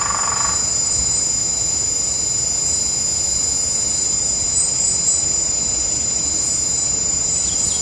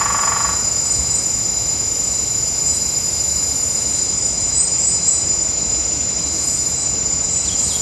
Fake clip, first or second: second